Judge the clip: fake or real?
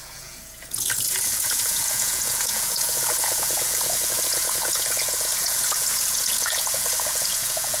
fake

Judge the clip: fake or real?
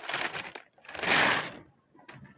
real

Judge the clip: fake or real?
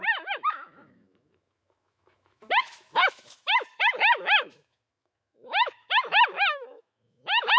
fake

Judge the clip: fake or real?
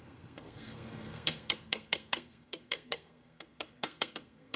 fake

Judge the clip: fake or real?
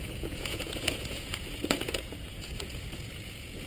fake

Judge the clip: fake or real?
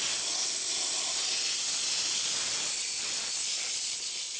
real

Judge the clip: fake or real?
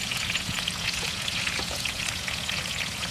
fake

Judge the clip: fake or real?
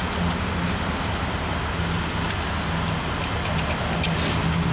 real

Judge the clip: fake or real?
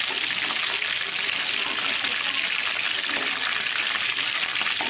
real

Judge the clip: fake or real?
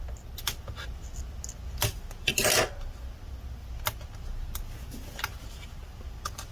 real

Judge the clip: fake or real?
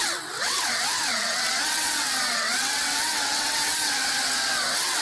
fake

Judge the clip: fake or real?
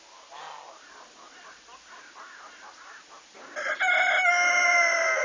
real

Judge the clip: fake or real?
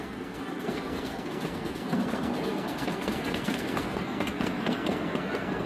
fake